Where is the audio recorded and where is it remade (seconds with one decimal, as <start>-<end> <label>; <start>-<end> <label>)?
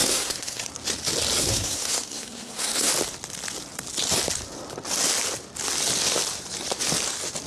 0.0-0.7 remade; 0.7-1.4 recorded; 1.4-2.9 remade; 2.9-7.5 recorded